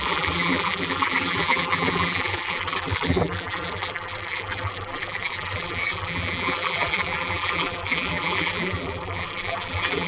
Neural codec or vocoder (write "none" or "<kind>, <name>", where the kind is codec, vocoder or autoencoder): vocoder, BigVGAN v2